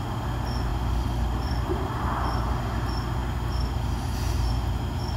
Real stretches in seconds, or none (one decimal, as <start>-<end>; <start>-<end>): 0.0-0.7; 2.6-5.2